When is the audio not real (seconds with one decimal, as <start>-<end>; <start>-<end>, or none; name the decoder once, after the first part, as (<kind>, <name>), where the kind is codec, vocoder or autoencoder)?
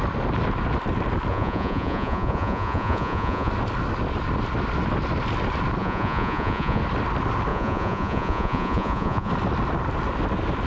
1.3-3.5 (vocoder, Vocos); 5.8-6.8; 7.5-9.3